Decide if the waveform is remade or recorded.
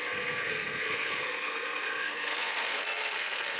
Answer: remade